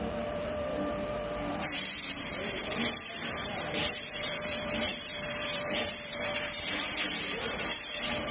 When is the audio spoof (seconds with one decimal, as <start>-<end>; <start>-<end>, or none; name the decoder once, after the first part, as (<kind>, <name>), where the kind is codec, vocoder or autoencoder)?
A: 0.0-2.6 (vocoder, BigVGAN v2); 3.1-8.3